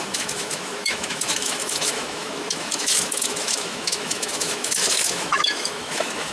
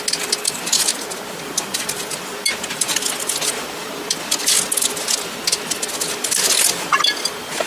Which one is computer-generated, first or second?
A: first